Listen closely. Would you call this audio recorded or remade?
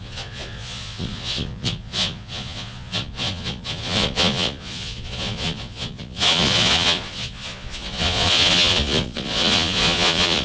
remade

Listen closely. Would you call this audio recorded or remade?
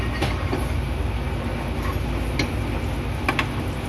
recorded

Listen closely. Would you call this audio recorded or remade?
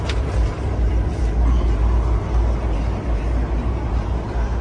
recorded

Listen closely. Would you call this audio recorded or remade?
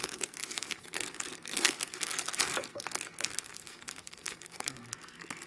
remade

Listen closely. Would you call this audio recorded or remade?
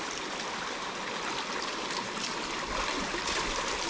recorded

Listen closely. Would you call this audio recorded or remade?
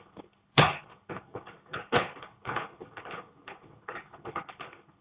remade